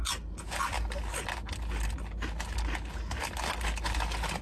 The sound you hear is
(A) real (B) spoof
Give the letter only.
A